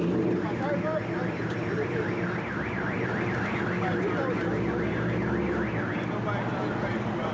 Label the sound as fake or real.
real